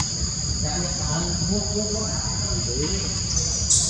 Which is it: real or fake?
real